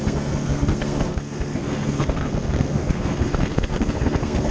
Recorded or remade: remade